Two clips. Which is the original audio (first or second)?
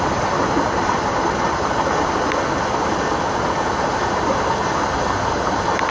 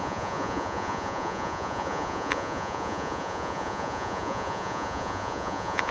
first